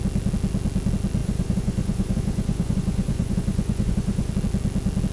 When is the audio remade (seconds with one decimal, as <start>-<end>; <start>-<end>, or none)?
1.2-4.3